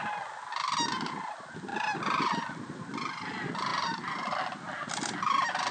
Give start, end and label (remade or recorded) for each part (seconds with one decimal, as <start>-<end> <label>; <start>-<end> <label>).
0.0-5.7 recorded